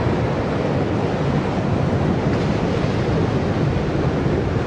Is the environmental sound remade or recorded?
recorded